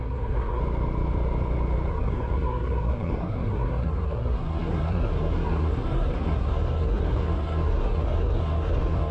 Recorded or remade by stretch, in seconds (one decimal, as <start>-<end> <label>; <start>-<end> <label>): 0.0-0.6 remade; 0.6-1.9 recorded; 1.9-9.1 remade